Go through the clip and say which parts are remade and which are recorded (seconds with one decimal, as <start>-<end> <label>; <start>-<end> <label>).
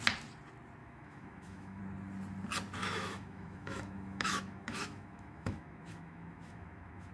0.0-0.8 recorded; 0.8-1.8 remade; 1.8-2.8 recorded; 2.8-7.1 remade